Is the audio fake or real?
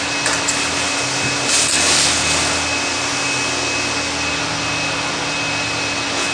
real